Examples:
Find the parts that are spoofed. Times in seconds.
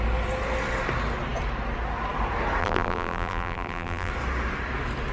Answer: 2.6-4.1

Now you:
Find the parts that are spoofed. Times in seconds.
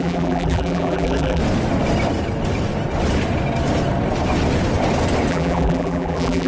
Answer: 0.0-1.4; 5.3-6.5